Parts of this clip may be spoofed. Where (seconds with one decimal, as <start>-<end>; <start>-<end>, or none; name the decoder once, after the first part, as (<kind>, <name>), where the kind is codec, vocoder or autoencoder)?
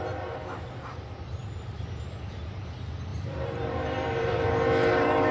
3.1-4.5 (vocoder, BigVGAN v2)